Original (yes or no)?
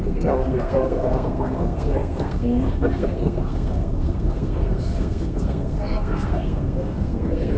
no